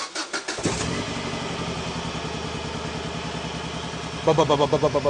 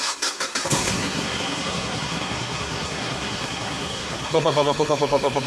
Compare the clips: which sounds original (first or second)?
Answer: first